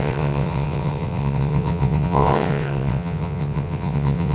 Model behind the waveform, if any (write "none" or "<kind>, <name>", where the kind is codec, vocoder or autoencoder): vocoder, WaveNeXt